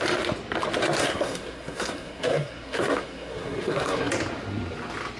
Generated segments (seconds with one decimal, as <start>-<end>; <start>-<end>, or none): 1.0-4.1